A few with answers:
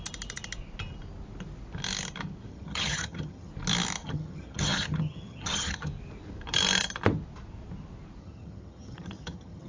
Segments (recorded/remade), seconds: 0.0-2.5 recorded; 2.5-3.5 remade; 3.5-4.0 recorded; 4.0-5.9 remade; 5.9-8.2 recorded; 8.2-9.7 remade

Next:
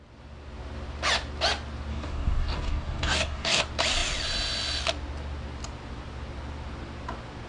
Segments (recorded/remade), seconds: 0.0-1.9 recorded; 1.9-3.6 remade; 3.6-7.5 recorded

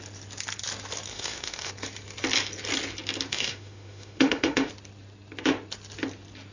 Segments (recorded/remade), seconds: 0.0-1.1 recorded; 1.1-1.7 remade; 1.7-3.3 recorded; 3.3-4.7 remade; 4.7-6.5 recorded